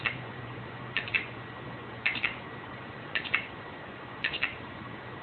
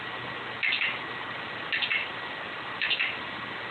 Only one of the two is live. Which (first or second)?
second